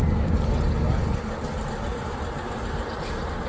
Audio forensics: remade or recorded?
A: recorded